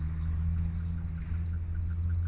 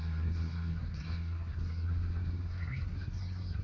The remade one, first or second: second